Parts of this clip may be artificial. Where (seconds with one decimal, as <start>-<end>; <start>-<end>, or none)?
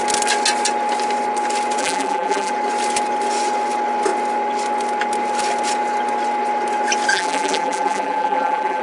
1.8-2.5; 7.1-8.8